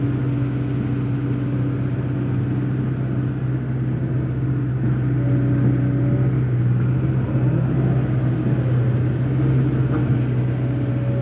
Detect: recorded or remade recorded